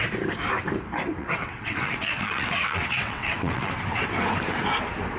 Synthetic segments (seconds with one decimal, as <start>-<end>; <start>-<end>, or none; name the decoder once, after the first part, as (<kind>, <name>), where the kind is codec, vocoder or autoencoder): 1.2-3.7 (vocoder, WaveNeXt)